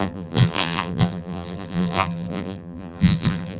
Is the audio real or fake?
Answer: fake